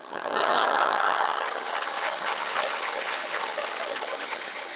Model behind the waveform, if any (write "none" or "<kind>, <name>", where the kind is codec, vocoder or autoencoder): vocoder, HiFi-GAN